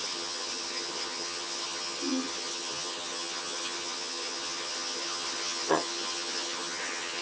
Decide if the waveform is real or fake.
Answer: fake